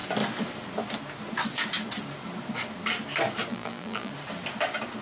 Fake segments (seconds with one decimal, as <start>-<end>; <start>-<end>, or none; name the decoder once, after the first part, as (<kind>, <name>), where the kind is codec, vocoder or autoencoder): 3.5-4.1 (vocoder, BigVGAN v2)